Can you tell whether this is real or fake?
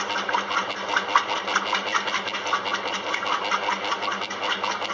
real